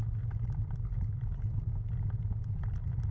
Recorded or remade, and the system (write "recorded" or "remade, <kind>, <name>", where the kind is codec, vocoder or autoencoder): recorded